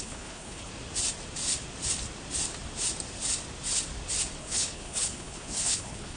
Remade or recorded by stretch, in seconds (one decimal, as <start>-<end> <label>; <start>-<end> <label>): 0.0-0.7 remade; 0.7-4.4 recorded; 4.4-6.2 remade